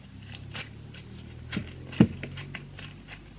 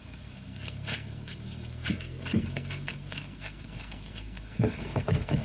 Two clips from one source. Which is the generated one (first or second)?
second